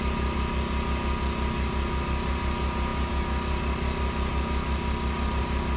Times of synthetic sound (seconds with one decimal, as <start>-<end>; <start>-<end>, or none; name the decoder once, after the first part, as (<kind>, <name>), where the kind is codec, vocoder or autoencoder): none